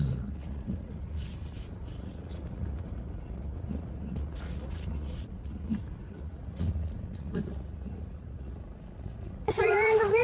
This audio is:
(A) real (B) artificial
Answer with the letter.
B